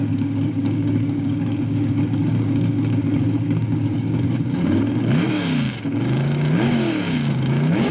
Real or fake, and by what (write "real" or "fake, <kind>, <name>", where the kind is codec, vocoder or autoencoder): fake, codec, DAC